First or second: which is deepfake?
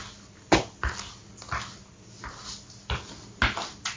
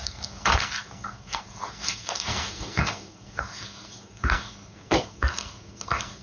second